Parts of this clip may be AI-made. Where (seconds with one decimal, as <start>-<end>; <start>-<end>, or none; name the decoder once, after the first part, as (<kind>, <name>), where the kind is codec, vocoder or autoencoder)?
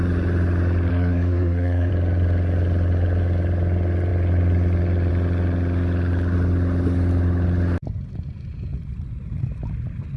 0.9-1.9 (codec, SNAC)